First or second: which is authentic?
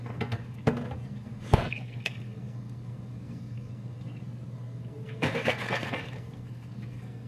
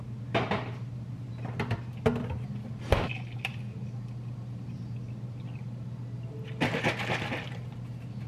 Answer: second